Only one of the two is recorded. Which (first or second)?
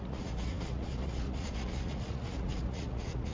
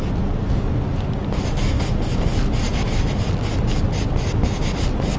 second